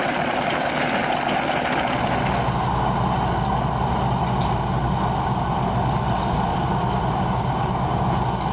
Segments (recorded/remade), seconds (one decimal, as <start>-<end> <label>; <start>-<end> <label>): 0.0-8.5 recorded